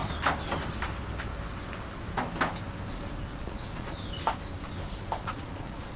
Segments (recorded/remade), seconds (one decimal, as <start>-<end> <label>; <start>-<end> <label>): 0.0-3.3 recorded; 3.3-4.0 remade; 4.0-5.2 recorded; 5.2-6.0 remade